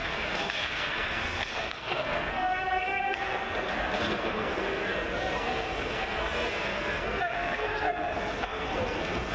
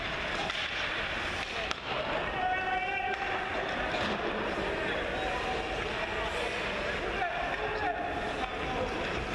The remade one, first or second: first